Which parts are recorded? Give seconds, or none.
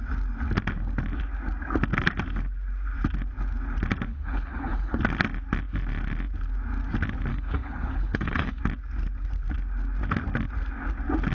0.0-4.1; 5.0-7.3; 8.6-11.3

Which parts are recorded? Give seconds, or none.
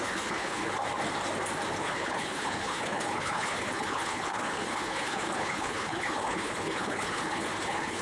0.6-1.8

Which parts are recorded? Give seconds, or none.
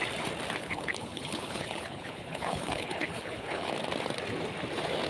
0.0-0.6; 3.7-5.1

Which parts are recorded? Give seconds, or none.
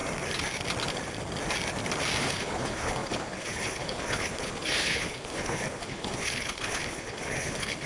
0.0-2.2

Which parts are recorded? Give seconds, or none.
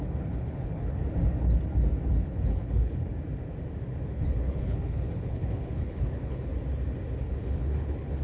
1.0-2.1; 3.1-4.1; 6.5-7.2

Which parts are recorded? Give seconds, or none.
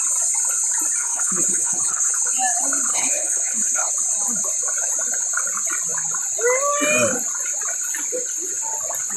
0.0-1.0; 2.1-2.9; 3.9-9.2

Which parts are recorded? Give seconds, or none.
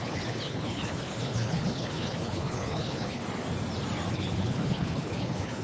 3.2-4.1